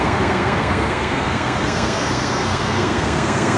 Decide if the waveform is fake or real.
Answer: fake